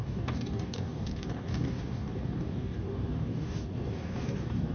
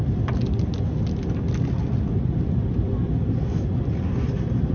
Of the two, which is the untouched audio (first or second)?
second